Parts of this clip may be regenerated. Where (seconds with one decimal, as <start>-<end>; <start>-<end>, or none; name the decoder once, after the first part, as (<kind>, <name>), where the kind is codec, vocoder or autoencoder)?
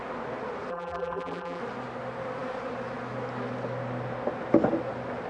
0.7-1.6 (vocoder, BigVGAN v2)